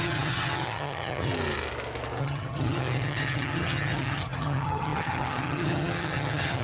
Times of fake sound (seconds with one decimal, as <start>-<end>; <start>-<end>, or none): 0.0-1.3; 2.2-6.6